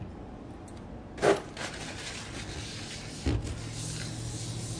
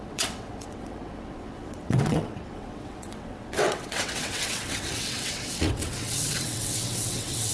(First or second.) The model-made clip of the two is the second